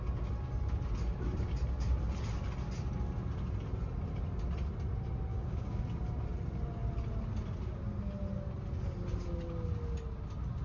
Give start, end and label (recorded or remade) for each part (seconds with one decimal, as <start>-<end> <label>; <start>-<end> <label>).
0.0-5.3 recorded; 5.3-5.8 remade; 5.8-10.6 recorded